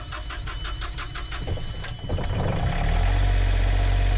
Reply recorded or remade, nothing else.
recorded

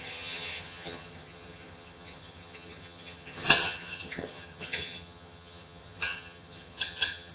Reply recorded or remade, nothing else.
remade